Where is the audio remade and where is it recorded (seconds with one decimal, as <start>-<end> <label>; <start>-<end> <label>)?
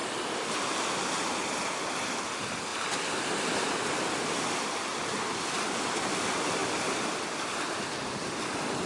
0.0-8.9 recorded